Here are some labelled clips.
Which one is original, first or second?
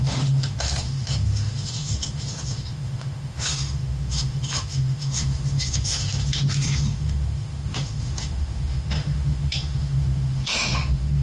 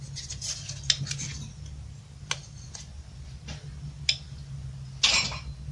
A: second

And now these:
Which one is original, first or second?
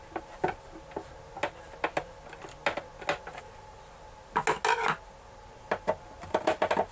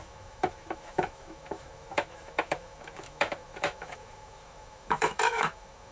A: first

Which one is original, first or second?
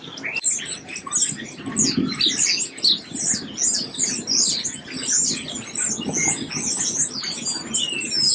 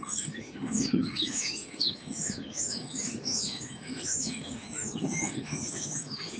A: first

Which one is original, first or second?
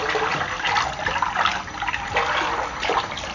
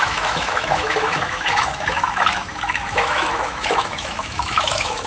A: first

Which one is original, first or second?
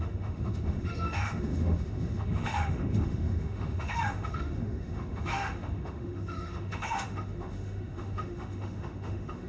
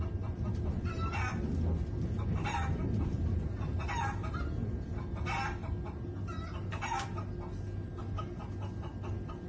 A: second